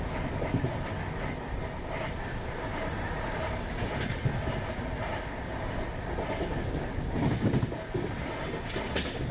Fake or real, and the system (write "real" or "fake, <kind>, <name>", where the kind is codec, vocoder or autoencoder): real